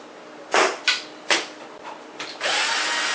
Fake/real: real